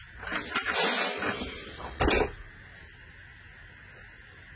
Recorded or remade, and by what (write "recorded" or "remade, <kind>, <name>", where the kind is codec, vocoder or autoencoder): recorded